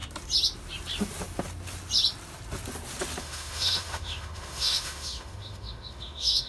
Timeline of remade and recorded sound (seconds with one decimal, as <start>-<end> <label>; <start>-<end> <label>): 0.0-3.2 recorded; 3.2-6.5 remade